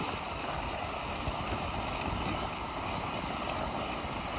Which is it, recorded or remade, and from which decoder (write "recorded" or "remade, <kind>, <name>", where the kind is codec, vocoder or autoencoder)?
recorded